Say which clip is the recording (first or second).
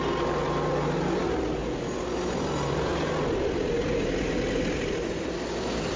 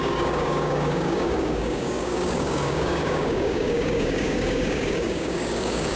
first